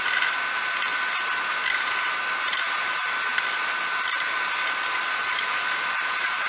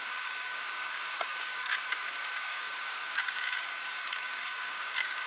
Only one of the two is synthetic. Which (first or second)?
second